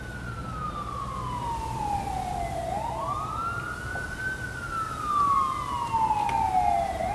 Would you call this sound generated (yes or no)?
no